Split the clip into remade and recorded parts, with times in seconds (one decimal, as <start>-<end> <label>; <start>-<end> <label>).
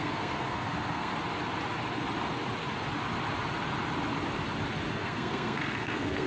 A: 0.0-1.1 remade; 1.1-4.9 recorded; 4.9-6.3 remade